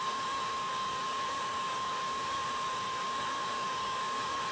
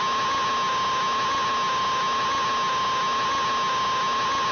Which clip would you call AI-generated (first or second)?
first